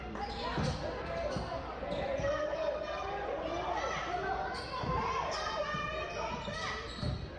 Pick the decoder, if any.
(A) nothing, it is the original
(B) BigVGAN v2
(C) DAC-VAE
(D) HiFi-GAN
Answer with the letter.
A